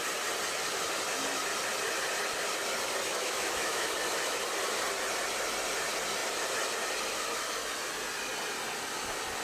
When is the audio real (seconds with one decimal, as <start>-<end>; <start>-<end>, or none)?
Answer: 0.0-3.1; 3.9-9.4